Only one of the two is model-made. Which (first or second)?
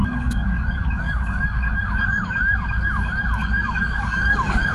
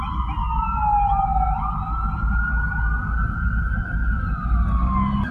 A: first